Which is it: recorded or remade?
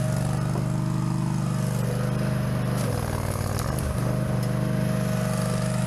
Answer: recorded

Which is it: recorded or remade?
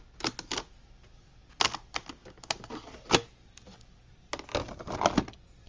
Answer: recorded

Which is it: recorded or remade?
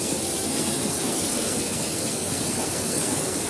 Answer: remade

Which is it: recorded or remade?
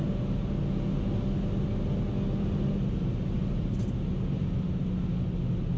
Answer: recorded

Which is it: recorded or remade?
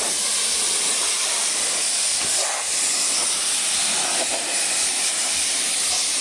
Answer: recorded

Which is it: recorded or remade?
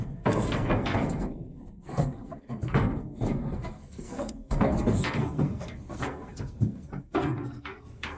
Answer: remade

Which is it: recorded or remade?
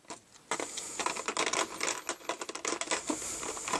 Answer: recorded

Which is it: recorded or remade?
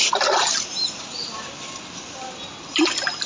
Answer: recorded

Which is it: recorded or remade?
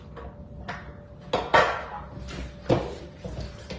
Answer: recorded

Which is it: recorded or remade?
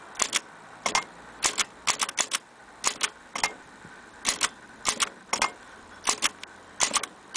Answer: recorded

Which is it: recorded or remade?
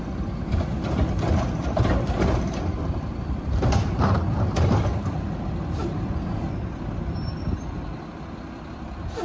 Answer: recorded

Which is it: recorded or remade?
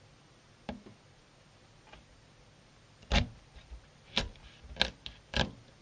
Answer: recorded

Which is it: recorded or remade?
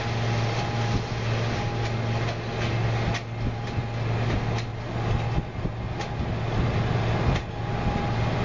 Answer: recorded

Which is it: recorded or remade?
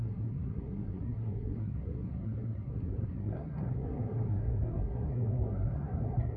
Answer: remade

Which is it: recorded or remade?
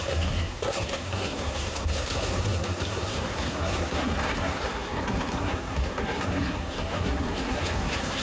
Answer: remade